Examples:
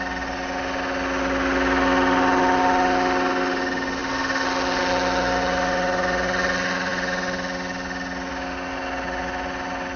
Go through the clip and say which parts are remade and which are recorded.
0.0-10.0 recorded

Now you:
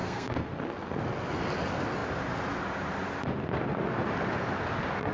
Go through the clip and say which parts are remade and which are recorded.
0.0-0.5 remade; 0.5-5.1 recorded

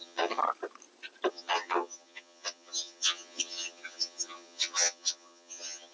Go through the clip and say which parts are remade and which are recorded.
0.0-0.4 remade; 0.4-1.3 recorded; 1.3-5.9 remade

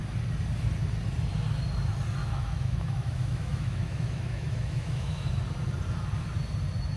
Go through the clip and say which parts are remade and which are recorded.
0.0-2.2 recorded; 2.2-5.3 remade; 5.3-7.0 recorded